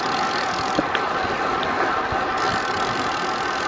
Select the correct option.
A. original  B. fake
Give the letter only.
A